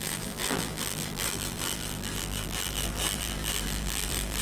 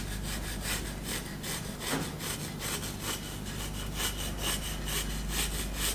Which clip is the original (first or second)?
second